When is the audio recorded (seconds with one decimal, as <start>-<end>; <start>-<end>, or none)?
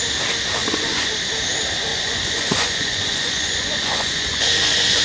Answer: 0.0-0.6; 1.1-1.9